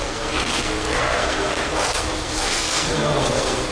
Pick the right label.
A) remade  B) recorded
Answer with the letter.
A